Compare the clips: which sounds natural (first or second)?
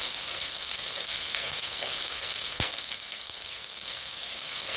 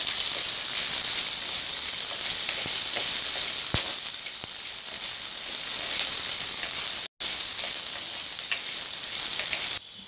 second